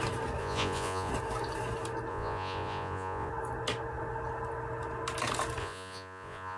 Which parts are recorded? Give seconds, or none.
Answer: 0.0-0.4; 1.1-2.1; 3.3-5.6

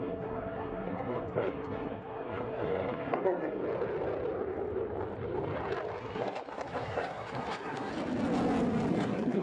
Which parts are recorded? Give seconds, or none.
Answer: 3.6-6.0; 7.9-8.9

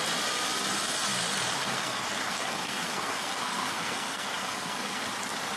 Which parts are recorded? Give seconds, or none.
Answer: 0.0-1.6; 5.0-5.6

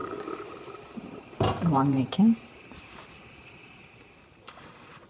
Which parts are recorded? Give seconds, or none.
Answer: none